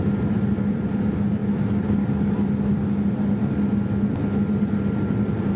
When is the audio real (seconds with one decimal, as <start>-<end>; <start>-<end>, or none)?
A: 0.0-5.6